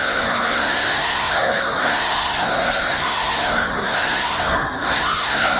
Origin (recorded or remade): remade